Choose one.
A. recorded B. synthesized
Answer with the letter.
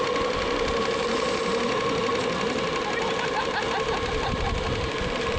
A